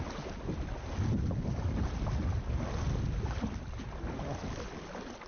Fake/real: real